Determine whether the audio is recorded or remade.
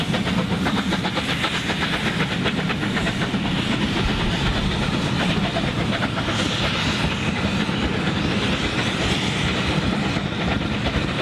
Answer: recorded